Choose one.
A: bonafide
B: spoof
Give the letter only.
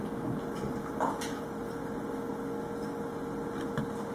A